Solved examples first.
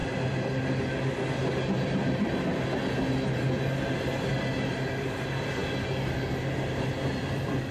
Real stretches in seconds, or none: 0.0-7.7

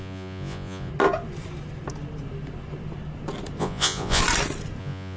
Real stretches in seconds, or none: 0.9-3.6; 4.2-4.8

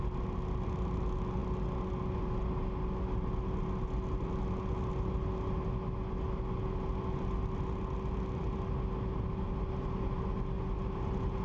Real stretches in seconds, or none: 0.0-11.4